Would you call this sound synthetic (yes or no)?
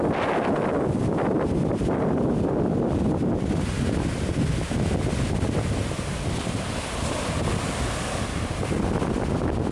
no